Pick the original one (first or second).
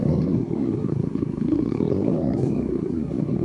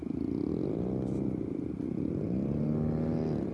second